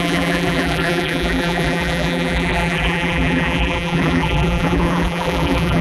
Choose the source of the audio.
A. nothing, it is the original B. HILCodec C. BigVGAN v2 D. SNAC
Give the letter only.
C